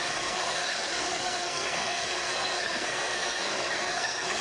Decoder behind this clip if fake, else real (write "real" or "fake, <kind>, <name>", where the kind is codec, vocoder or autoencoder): fake, codec, SNAC